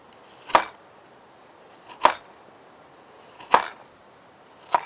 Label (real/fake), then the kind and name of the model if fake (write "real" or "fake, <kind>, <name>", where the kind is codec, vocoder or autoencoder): real